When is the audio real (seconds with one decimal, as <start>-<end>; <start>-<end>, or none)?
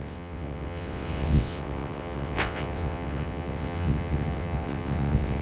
none